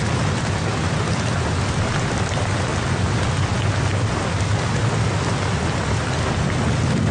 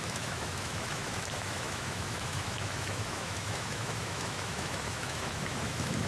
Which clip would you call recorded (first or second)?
first